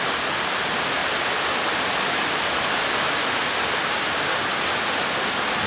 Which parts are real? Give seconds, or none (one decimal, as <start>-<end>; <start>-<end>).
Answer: 0.0-5.7